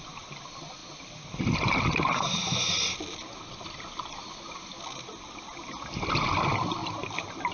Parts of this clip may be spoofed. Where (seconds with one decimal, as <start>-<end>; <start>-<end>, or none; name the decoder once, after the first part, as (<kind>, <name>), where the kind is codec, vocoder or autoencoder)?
6.8-7.5 (vocoder, BigVGAN v2)